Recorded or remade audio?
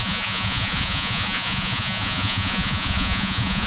remade